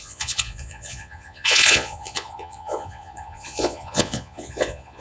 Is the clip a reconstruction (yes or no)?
yes